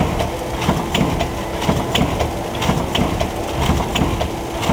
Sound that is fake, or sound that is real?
real